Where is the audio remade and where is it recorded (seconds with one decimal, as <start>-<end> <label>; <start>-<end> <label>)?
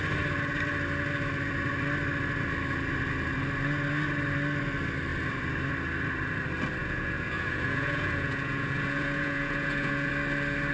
0.0-6.8 recorded; 6.8-10.1 remade; 10.1-10.7 recorded